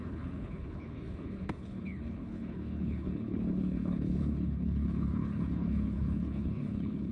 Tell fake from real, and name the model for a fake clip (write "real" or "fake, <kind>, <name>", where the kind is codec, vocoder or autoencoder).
fake, codec, HILCodec